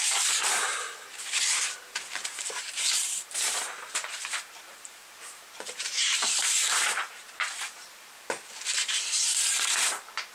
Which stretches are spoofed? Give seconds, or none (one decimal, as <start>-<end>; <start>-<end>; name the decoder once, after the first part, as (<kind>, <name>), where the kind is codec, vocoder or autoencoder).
0.0-10.3 (vocoder, BigVGAN v2)